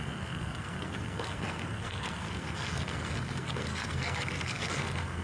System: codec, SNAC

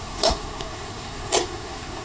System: codec, SNAC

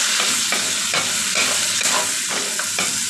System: none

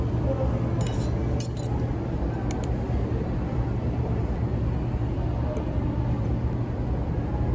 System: none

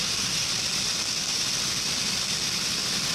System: none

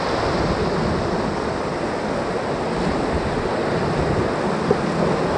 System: none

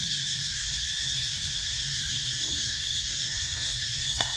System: codec, SNAC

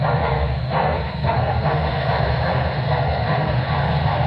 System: codec, SNAC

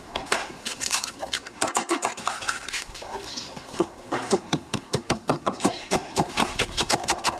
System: codec, SNAC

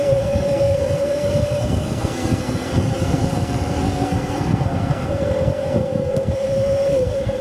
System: codec, SNAC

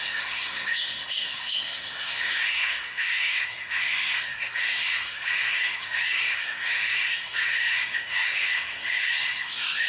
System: codec, SNAC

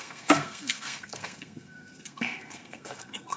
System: codec, SNAC